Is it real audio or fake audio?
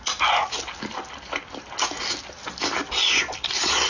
real